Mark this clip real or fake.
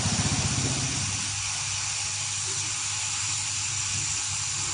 real